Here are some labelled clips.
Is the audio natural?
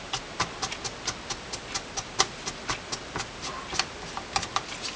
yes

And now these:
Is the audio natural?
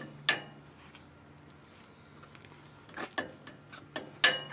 yes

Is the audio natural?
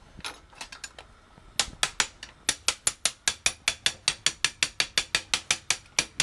yes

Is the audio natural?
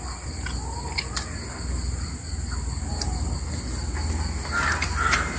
yes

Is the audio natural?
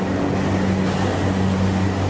yes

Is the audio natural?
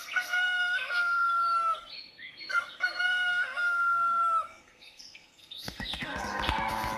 no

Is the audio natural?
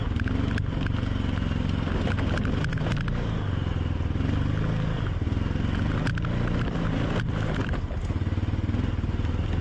yes